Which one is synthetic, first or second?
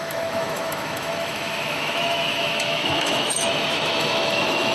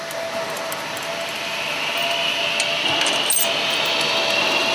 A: first